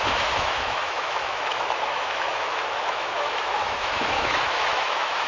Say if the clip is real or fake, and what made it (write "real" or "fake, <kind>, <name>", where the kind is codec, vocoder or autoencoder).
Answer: fake, autoencoder, DAC-VAE